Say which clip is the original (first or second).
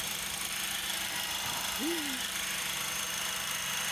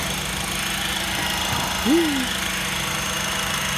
second